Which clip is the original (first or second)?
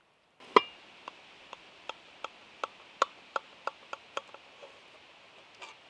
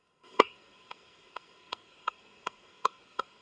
first